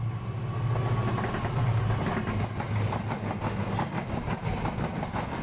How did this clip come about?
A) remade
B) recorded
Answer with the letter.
B